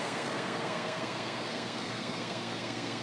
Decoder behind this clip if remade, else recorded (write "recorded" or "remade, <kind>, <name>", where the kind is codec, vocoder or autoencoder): remade, codec, SNAC